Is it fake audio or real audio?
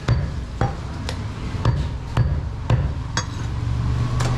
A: real